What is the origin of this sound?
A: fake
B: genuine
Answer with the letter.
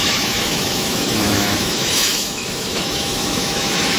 A